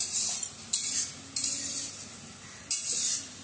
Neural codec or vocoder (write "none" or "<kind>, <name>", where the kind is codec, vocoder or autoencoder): none